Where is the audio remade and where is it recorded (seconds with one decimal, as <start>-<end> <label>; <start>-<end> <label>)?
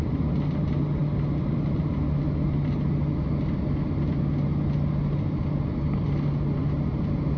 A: 0.0-7.4 recorded